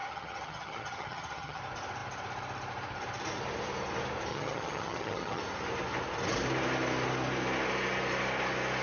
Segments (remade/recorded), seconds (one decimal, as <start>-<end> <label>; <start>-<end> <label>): 0.0-1.6 remade; 1.6-4.3 recorded; 4.3-5.4 remade; 5.4-8.8 recorded